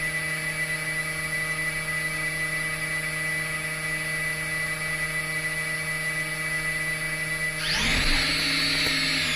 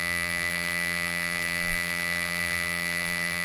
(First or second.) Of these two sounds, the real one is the first